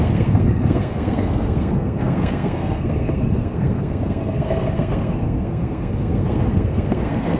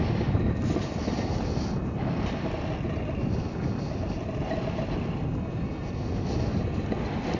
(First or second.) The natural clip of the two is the second